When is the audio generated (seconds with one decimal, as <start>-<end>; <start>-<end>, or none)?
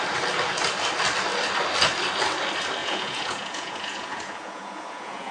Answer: 2.8-5.3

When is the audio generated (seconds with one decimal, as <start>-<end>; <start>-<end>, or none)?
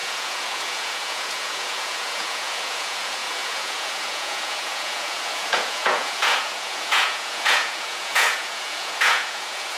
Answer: 0.0-9.8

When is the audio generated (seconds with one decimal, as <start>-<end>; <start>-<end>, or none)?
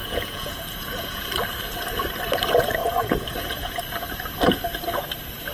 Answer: 0.0-1.2; 2.8-3.8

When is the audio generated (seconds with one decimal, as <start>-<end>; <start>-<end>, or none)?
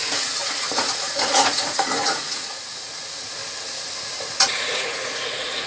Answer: 0.0-3.4; 4.2-5.7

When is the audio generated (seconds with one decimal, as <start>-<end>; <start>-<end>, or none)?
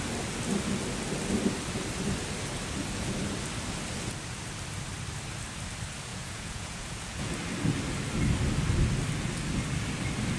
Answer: 6.1-7.3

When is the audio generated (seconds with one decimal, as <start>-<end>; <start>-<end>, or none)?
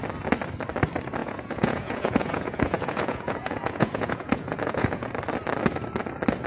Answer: 1.2-5.1